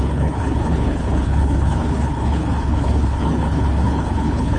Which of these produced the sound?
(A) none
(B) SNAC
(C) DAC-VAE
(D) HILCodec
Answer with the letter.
D